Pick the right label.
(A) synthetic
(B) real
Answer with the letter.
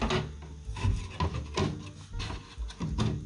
B